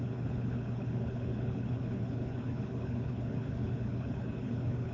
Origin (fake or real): fake